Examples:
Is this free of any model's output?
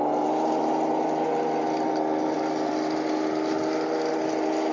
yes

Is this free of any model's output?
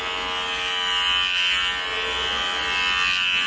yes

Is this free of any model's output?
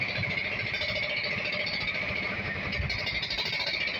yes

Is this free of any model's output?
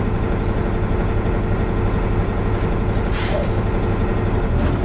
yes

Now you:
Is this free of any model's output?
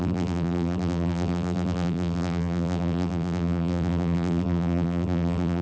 no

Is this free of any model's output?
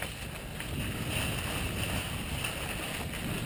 yes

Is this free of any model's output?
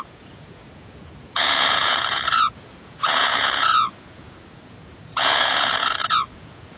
no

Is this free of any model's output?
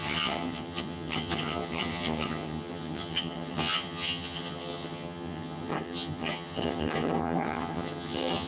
no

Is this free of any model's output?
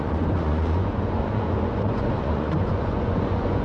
no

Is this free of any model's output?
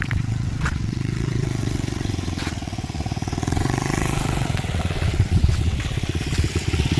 no